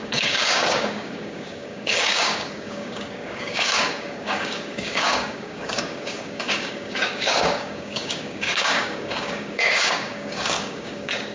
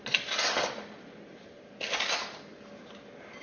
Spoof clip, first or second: first